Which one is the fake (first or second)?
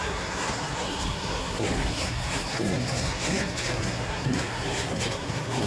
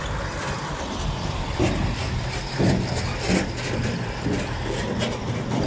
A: first